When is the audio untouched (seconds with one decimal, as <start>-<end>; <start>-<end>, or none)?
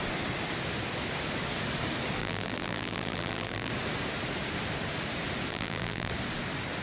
0.0-2.2; 3.7-5.5; 6.1-6.8